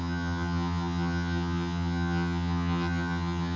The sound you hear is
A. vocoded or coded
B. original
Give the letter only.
A